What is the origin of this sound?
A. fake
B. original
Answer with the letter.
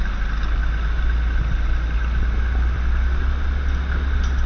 B